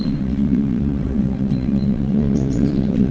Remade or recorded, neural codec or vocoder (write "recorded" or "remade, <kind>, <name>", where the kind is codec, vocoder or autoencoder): remade, vocoder, WaveNeXt